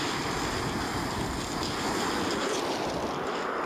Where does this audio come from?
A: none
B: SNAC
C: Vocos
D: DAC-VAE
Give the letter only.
A